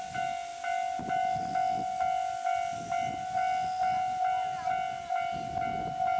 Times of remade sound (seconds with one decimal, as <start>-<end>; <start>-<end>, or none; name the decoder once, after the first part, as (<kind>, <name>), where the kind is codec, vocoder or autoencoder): none

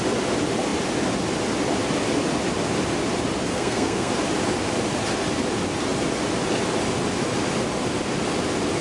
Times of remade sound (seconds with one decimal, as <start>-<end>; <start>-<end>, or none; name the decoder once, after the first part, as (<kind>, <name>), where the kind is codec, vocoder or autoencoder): 3.5-4.1 (codec, SNAC)

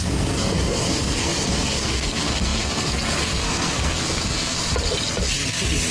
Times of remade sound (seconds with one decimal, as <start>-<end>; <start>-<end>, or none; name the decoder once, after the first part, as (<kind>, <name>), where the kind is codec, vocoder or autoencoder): 0.0-4.7 (codec, SNAC)